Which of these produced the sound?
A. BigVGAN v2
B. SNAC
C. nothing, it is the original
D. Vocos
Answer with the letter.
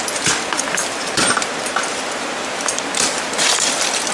C